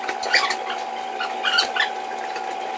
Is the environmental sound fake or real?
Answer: real